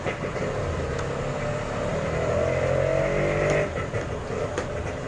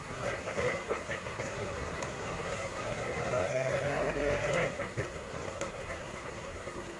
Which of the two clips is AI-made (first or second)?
second